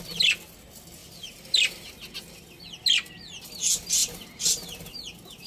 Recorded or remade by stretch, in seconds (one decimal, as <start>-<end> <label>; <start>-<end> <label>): 0.0-5.5 recorded